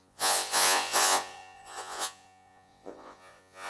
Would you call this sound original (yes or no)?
no